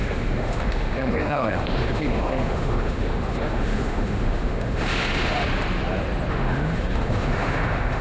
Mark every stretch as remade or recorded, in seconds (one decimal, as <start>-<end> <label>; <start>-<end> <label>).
0.0-5.4 remade; 5.4-6.3 recorded; 6.3-8.0 remade